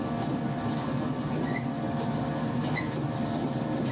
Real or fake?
real